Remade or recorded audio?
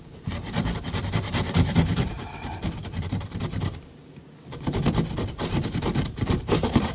remade